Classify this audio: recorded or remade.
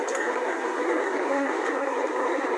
remade